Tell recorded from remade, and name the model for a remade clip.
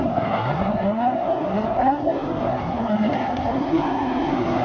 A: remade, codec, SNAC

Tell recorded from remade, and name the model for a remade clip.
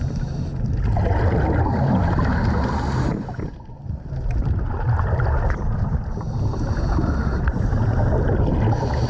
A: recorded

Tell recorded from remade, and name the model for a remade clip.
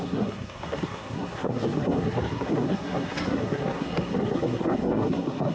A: remade, codec, SNAC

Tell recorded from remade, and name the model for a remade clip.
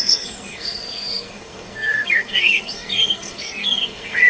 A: remade, codec, SNAC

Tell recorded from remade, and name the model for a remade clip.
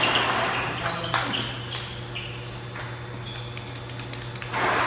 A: recorded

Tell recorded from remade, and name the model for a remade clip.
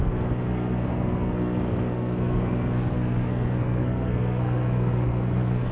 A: remade, codec, SNAC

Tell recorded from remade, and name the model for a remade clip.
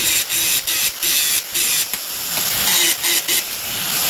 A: recorded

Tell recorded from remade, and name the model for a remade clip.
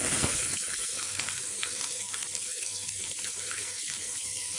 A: remade, codec, SNAC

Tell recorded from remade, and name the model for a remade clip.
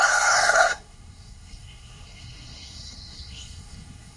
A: remade, codec, SNAC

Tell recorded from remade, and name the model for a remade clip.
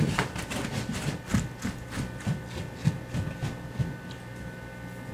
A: recorded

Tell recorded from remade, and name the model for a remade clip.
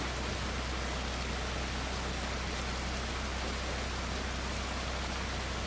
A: recorded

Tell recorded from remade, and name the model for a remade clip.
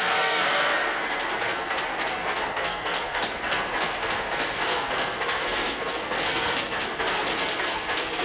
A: remade, codec, SNAC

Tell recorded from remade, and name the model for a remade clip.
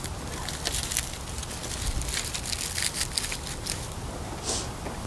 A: recorded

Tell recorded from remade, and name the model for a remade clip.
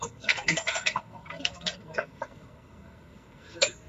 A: remade, codec, SNAC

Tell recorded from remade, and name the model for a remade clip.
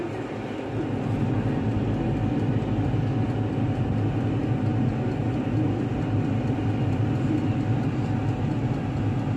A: recorded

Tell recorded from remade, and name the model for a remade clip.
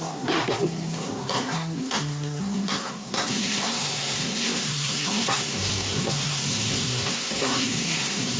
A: remade, codec, SNAC